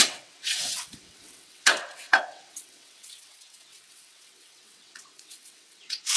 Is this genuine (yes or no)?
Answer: no